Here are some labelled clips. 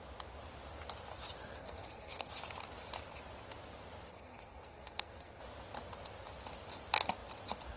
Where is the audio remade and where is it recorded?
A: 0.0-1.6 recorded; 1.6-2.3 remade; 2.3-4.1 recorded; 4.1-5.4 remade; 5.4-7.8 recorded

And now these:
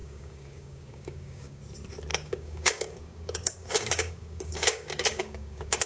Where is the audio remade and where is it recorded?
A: 0.0-1.6 remade; 1.6-2.1 recorded; 2.1-5.9 remade

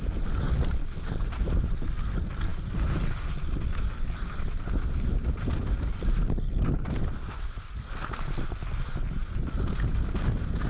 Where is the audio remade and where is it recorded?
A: 0.0-10.7 recorded